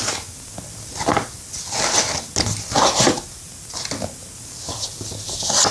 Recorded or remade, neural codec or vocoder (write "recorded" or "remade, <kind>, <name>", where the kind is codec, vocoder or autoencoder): recorded